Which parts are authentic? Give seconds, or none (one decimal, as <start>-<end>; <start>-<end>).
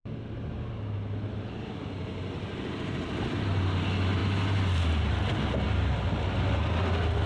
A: 0.0-7.3